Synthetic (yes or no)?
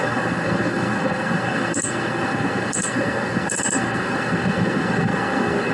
yes